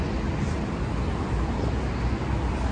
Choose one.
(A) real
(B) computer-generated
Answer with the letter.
A